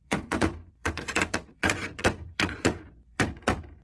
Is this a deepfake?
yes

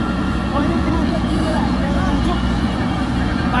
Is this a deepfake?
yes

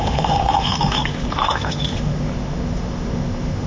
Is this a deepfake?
yes